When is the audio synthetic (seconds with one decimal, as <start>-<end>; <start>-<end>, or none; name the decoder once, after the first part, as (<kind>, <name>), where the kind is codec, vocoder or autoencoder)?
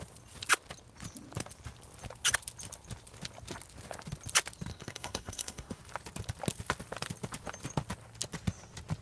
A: 4.7-5.8 (codec, SNAC)